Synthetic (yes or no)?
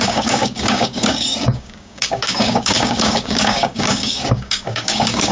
yes